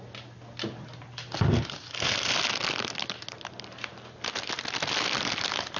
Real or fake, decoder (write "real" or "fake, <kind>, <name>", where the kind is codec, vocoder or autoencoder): real